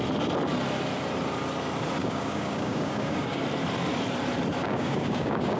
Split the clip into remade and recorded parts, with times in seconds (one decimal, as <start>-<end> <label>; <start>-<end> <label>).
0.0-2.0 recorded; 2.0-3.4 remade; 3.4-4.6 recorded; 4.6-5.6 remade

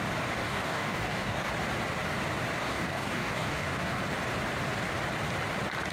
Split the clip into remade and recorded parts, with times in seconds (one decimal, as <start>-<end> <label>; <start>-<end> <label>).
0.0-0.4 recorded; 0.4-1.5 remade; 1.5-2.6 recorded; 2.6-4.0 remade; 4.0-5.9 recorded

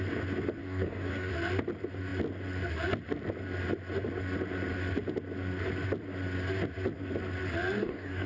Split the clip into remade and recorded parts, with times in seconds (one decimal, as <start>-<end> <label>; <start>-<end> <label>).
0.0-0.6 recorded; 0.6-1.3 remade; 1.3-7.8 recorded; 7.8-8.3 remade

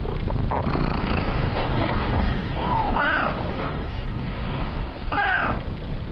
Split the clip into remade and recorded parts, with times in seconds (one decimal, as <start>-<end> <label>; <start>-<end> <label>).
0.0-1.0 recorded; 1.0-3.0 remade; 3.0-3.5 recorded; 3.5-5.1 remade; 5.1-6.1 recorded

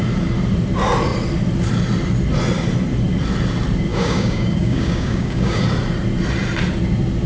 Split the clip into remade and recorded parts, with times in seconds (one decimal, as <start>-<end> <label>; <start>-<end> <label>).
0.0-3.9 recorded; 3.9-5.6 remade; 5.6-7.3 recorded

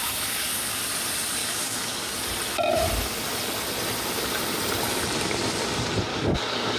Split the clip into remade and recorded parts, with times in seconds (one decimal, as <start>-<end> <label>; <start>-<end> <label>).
0.0-0.8 remade; 0.8-1.4 recorded; 1.4-2.1 remade; 2.1-6.1 recorded; 6.1-6.8 remade